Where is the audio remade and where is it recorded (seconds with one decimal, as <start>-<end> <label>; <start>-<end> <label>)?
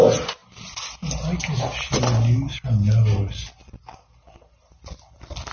0.0-5.5 recorded